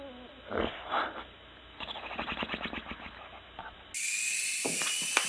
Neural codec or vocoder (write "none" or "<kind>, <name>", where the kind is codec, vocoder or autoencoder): none